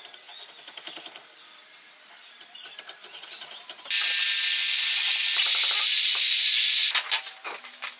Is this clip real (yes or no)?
yes